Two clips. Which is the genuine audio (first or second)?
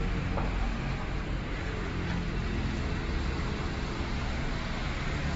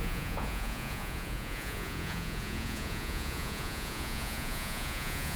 first